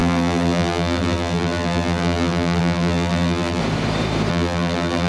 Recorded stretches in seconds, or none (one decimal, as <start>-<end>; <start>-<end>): 3.6-4.3